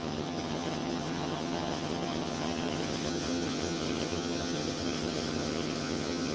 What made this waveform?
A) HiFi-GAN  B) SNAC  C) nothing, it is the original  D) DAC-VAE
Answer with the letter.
A